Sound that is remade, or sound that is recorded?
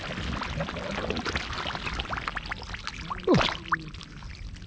recorded